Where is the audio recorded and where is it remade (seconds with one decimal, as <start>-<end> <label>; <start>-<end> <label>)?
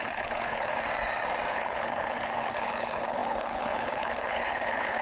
0.0-0.7 remade; 0.7-1.5 recorded; 1.5-5.0 remade